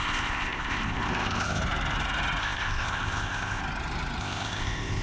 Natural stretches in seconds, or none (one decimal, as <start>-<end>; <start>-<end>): 1.6-2.4; 3.6-4.2